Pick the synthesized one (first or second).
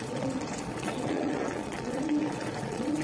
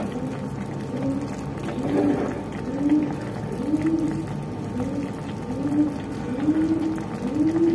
first